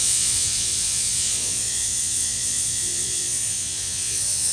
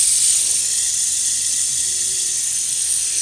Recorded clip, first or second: second